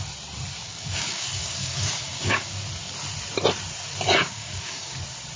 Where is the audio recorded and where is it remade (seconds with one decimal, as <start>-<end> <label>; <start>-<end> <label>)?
0.0-0.6 recorded; 0.6-2.5 remade; 2.5-4.2 recorded; 4.2-5.0 remade; 5.0-5.4 recorded